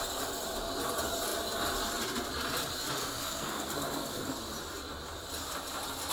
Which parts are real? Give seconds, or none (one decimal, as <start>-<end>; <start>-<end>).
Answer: 0.0-3.0; 4.4-6.1